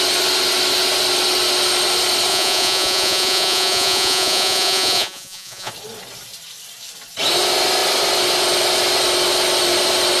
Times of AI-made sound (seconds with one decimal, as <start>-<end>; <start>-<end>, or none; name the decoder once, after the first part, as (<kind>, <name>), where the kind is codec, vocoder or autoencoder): 2.3-5.7 (vocoder, Vocos)